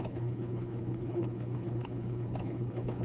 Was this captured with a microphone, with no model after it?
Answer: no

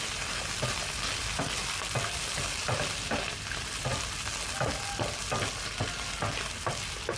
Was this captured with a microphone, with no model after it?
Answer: yes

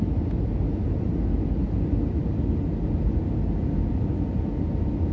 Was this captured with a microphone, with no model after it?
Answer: yes